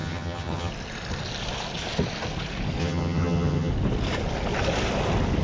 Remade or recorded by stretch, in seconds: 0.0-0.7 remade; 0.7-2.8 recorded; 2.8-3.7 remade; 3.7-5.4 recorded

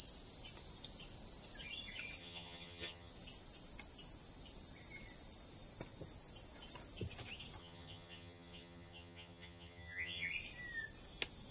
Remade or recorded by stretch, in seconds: 0.0-2.2 recorded; 2.2-3.1 remade; 3.1-7.6 recorded; 7.6-10.3 remade; 10.3-11.5 recorded

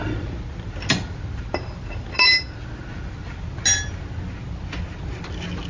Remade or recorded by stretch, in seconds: 0.0-5.7 recorded